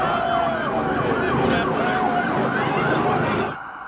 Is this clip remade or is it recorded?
recorded